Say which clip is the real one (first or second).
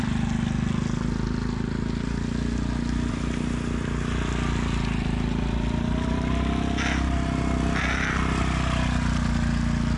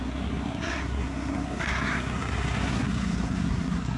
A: first